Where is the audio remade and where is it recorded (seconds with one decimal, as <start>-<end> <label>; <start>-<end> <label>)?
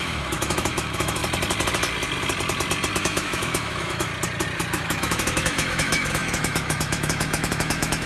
0.0-1.2 remade; 1.2-3.0 recorded; 3.0-4.1 remade; 4.1-4.7 recorded; 4.7-8.1 remade